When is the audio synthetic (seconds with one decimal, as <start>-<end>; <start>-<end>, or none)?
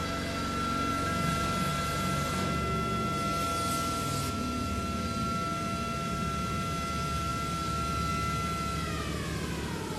none